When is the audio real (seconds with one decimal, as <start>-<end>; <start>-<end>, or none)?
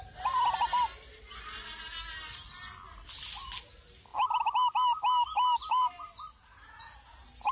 0.0-7.5